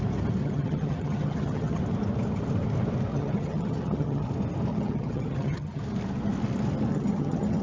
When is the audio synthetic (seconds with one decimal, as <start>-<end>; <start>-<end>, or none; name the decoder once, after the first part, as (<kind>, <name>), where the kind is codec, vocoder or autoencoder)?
0.4-1.8 (vocoder, HiFi-GAN); 3.1-4.3; 4.7-5.8; 6.9-7.6